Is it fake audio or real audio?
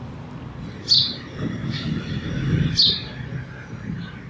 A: real